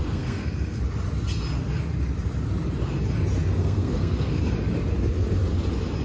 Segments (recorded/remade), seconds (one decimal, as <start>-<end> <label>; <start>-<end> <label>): 0.0-0.8 remade; 0.8-3.6 recorded; 3.6-4.4 remade; 4.4-6.0 recorded